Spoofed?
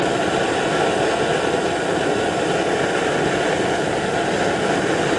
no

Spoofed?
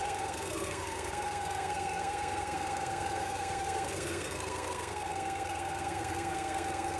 yes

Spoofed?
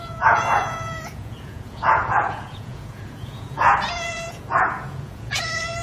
yes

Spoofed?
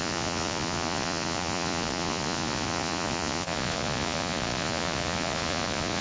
yes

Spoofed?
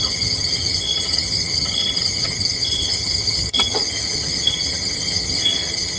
yes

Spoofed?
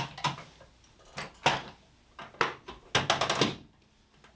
no